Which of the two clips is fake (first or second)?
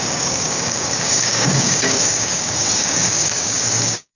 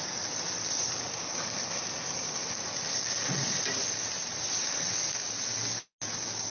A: first